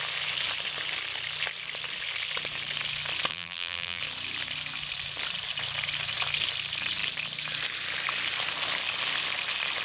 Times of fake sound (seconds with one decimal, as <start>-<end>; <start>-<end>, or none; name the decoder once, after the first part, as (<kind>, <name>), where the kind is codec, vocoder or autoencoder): 3.3-4.0 (vocoder, BigVGAN v2)